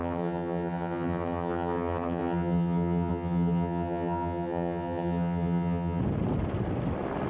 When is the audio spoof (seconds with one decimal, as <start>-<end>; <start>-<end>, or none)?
0.0-6.0